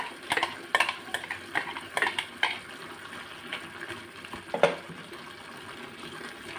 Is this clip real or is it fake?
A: real